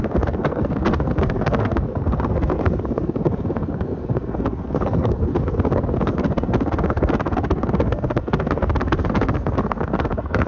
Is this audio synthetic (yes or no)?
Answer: yes